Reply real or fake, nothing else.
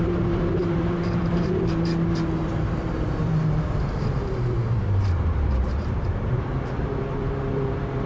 fake